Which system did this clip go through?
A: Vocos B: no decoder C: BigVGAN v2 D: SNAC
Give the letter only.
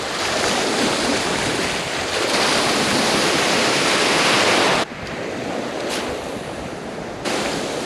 C